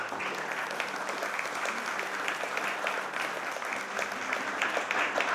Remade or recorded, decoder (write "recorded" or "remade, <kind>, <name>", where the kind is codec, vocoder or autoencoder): recorded